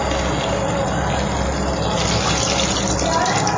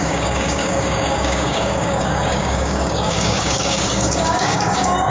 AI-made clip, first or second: second